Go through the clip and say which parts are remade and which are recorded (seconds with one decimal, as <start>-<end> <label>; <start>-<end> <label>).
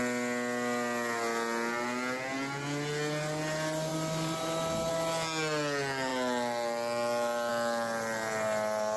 0.0-9.0 recorded